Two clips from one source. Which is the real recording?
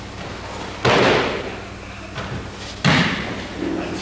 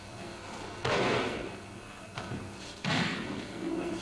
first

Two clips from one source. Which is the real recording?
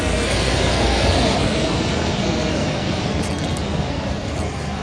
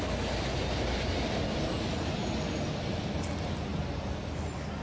second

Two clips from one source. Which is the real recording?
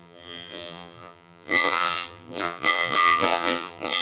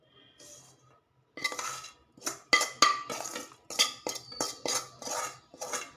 second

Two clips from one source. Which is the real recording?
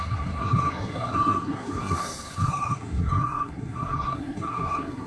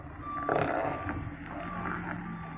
second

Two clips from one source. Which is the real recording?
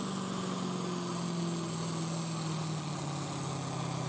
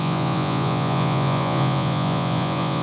first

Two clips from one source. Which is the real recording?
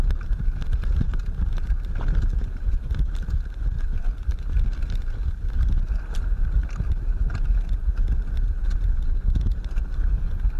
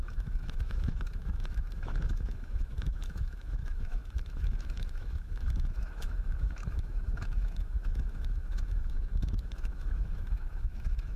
first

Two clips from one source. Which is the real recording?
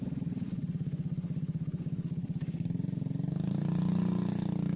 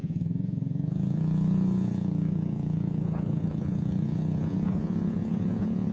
first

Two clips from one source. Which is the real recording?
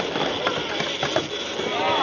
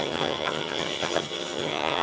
first